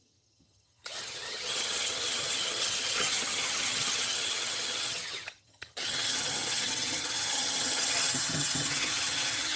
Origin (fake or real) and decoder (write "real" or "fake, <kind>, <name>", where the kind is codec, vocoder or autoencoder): fake, vocoder, HiFi-GAN